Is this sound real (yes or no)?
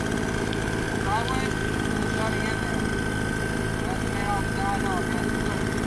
yes